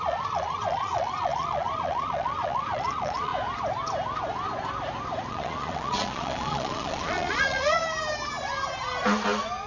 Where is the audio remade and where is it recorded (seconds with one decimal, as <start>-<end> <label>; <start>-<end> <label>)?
0.0-3.3 remade; 3.3-5.3 recorded; 5.3-7.8 remade; 7.8-9.7 recorded